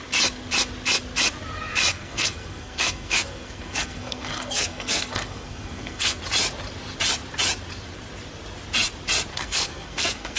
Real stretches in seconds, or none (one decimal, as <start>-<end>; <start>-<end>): 0.0-1.9; 6.2-9.3